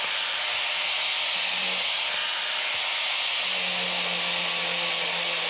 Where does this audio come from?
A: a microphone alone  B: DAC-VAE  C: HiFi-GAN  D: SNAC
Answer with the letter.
A